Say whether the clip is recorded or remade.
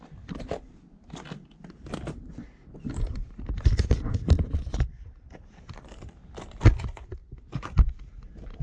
recorded